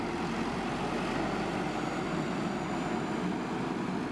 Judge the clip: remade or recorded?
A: recorded